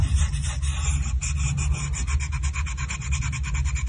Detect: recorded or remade recorded